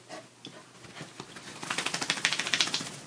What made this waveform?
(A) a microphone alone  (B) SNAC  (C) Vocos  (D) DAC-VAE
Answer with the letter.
A